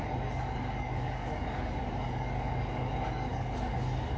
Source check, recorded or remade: remade